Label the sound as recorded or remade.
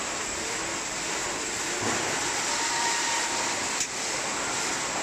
remade